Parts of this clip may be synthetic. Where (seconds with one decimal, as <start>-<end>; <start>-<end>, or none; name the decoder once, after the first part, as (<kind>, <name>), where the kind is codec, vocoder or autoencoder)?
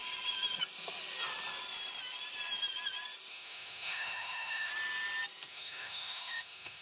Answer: 3.3-4.7 (autoencoder, DAC-VAE); 5.5-6.8